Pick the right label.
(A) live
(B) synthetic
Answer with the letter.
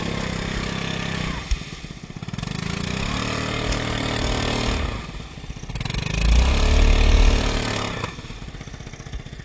A